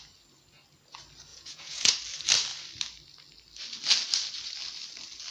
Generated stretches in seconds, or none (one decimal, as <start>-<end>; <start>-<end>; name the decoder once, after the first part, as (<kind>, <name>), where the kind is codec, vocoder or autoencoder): 1.3-1.9 (vocoder, Vocos)